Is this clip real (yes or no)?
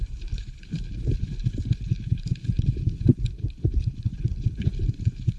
no